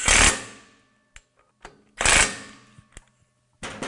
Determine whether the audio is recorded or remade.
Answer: recorded